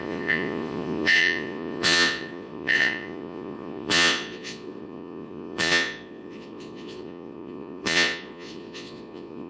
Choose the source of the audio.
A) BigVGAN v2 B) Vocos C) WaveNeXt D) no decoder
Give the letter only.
B